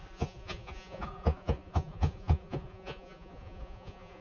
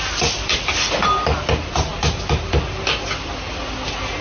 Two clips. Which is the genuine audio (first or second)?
second